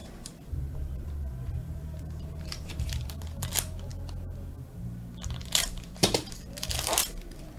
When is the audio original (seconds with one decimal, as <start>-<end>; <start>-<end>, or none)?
3.5-5.4; 6.4-7.6